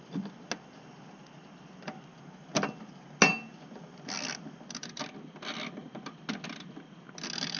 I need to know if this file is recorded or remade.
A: recorded